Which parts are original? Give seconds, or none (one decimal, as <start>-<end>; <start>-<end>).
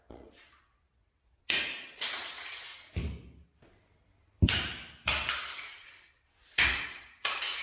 1.4-2.1; 2.7-5.3